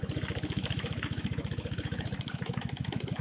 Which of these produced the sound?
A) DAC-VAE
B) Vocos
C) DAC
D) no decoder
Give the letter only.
A